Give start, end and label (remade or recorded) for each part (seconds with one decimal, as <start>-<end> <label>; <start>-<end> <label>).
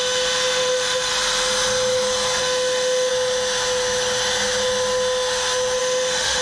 0.0-1.1 remade; 1.1-2.4 recorded; 2.4-3.1 remade; 3.1-5.8 recorded; 5.8-6.4 remade